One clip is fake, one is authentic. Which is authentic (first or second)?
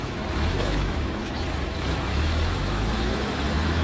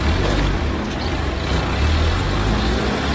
second